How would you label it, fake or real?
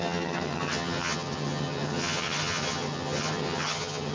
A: fake